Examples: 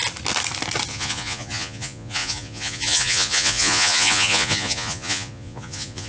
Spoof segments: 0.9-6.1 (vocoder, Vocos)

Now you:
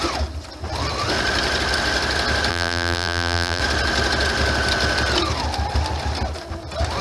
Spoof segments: 2.5-3.6 (vocoder, BigVGAN v2)

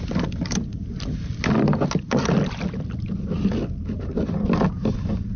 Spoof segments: none

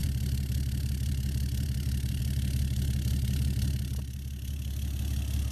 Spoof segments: 0.0-5.5 (vocoder, BigVGAN v2)